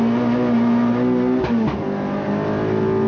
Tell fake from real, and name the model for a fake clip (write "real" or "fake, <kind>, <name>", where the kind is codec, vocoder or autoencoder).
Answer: real